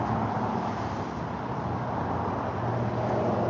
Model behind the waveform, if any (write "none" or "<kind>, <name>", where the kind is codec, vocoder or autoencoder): none